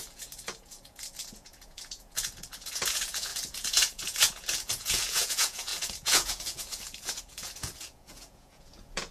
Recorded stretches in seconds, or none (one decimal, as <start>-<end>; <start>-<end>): none